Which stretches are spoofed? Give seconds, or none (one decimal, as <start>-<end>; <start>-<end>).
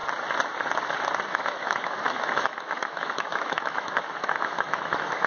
1.3-5.3